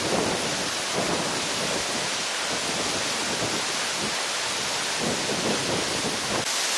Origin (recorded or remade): recorded